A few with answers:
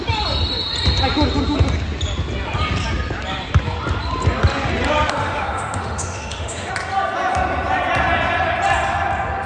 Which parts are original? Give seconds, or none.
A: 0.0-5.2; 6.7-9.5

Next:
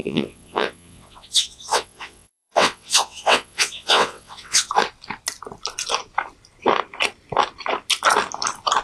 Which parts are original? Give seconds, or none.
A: 4.7-8.8

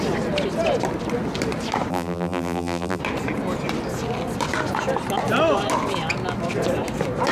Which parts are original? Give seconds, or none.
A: 0.0-1.9; 3.0-7.3

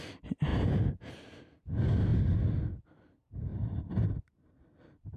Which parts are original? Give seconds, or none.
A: 0.0-0.5; 1.1-3.5; 4.5-5.2

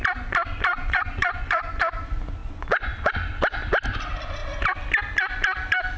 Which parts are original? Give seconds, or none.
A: 0.0-0.7; 1.8-2.4; 3.1-6.0